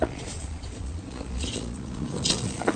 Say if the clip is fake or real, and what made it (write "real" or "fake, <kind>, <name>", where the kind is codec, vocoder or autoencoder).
fake, vocoder, Vocos